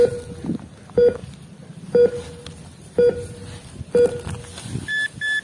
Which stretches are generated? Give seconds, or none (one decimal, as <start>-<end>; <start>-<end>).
none